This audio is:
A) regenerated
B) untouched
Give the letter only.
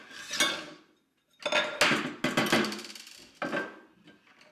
B